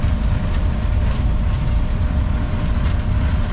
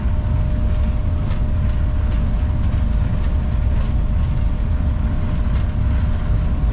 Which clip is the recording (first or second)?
second